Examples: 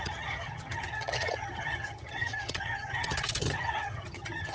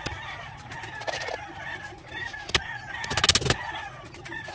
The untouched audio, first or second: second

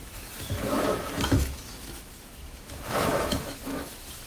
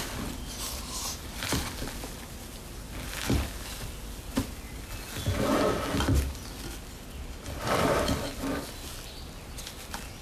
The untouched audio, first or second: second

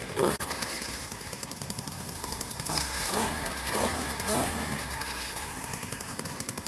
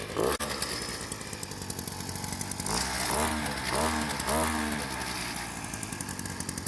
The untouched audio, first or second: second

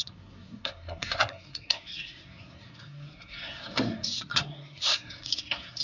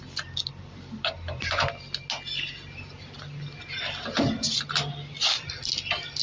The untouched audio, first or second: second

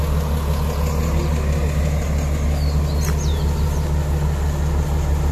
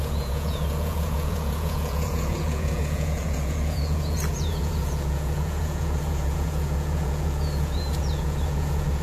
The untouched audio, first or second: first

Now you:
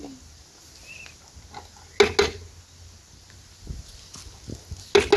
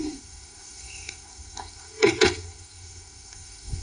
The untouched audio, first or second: first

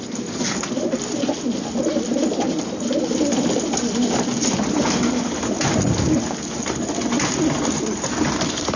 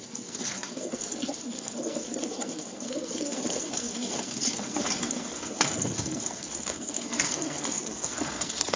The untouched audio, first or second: first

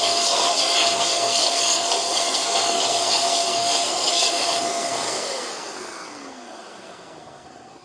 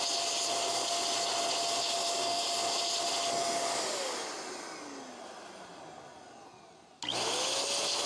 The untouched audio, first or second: second